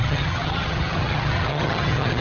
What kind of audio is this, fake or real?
fake